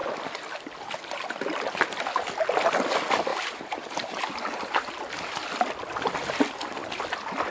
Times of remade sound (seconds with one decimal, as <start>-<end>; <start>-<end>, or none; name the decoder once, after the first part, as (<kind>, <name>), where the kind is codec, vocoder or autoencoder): 3.3-4.2 (vocoder, BigVGAN v2)

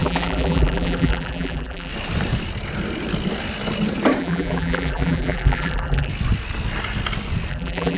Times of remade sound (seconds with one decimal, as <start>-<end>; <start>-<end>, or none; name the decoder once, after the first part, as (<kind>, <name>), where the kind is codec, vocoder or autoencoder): 0.0-1.9 (vocoder, BigVGAN v2); 4.2-6.1; 7.5-8.0

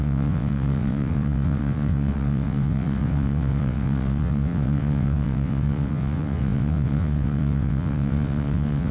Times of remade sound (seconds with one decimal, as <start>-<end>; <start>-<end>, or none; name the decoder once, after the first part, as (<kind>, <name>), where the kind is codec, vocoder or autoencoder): 0.0-8.9 (vocoder, WaveNeXt)

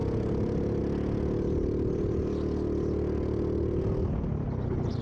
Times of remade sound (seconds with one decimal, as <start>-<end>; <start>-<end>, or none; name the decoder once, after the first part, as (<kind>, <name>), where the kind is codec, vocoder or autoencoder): 0.0-0.8 (vocoder, BigVGAN v2)

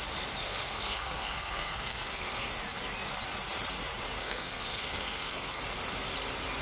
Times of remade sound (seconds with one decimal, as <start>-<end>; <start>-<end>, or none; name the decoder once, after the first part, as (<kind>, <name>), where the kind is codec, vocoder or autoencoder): 0.4-2.5 (codec, SNAC); 4.2-5.6

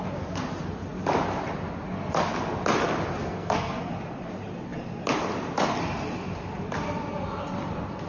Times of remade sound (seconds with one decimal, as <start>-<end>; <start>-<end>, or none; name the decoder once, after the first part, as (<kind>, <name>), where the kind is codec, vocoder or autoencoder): 3.2-3.9 (codec, SNAC)